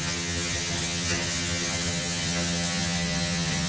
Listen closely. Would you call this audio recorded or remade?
remade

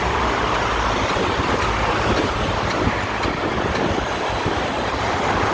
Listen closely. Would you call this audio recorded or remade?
recorded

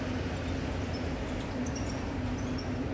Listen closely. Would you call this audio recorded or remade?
recorded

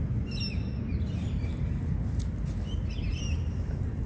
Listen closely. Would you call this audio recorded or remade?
recorded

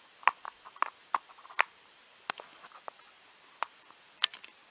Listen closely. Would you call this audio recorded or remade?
recorded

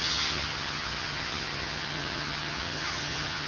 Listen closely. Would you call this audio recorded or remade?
remade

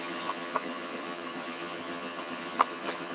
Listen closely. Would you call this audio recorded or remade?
remade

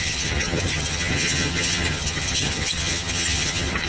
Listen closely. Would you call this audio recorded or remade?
remade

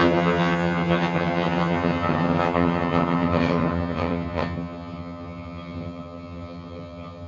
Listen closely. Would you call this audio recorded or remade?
remade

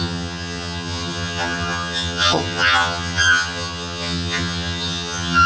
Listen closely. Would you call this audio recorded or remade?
remade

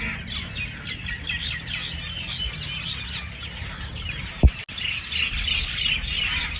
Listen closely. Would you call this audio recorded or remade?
recorded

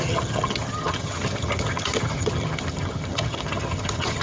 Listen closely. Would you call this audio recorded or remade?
remade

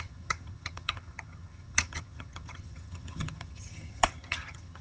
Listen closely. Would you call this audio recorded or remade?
remade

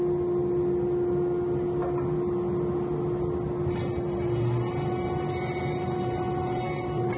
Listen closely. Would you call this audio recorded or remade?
recorded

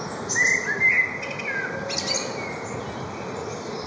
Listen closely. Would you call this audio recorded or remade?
recorded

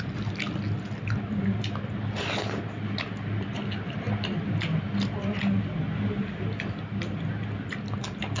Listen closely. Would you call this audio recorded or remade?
recorded